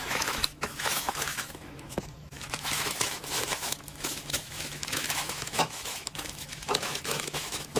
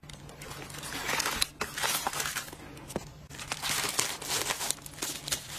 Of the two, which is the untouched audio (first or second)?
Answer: second